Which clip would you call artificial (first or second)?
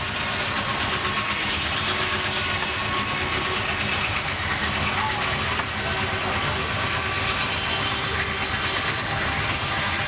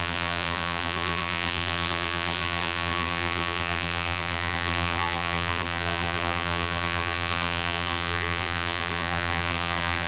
second